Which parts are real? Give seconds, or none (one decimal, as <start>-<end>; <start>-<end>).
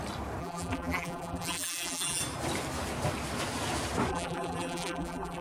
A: 0.0-0.4; 2.2-4.1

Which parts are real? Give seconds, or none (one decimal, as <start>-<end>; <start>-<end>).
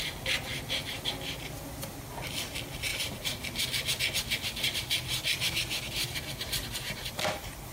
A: 0.0-2.9; 4.0-6.1; 7.0-7.7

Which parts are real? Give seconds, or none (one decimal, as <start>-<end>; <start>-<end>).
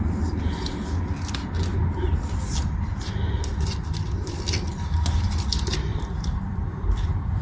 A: 0.0-1.7; 2.8-5.9